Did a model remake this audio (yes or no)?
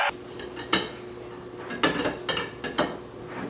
no